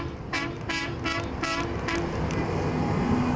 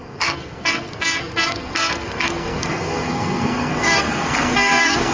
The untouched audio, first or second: first